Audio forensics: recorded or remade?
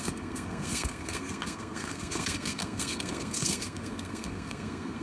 remade